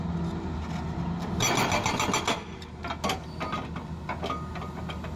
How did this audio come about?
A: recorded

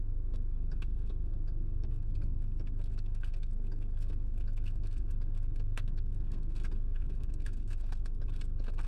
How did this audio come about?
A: remade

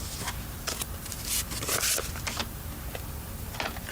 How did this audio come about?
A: recorded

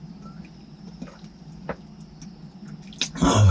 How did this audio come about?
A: recorded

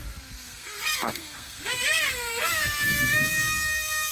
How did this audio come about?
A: remade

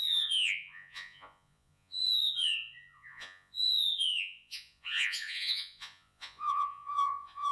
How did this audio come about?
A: remade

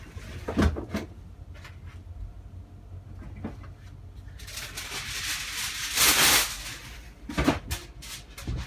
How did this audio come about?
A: recorded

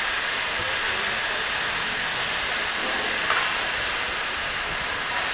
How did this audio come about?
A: recorded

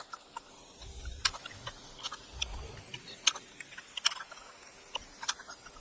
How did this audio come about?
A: recorded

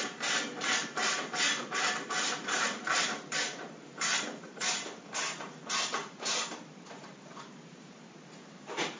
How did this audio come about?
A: remade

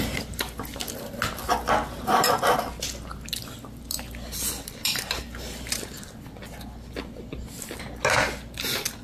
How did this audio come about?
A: recorded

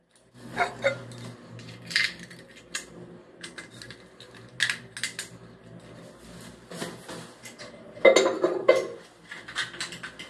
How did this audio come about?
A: recorded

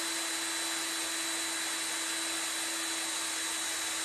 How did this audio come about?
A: recorded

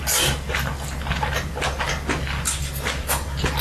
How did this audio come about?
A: recorded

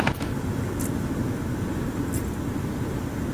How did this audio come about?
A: recorded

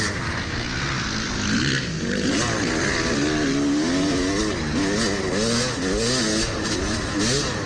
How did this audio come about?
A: recorded